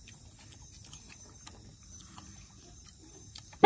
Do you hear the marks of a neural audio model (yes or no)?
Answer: no